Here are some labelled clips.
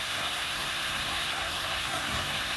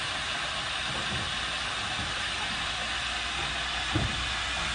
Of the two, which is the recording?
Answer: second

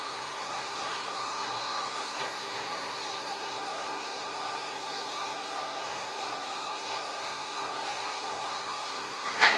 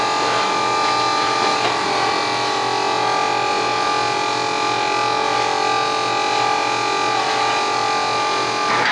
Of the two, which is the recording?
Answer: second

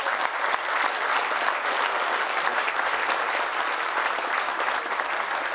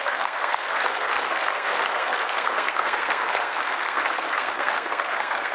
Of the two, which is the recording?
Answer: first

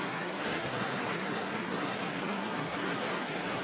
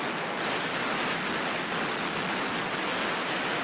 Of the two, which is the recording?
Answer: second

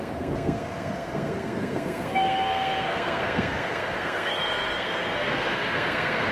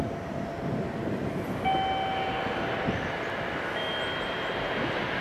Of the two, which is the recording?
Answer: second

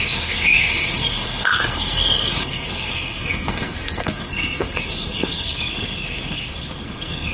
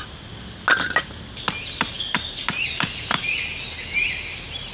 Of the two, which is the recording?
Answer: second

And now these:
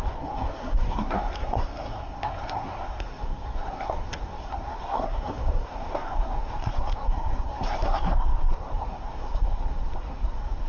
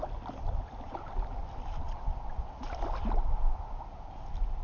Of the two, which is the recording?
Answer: second